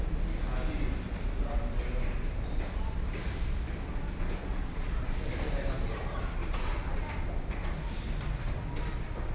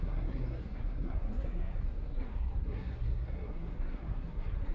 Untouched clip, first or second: first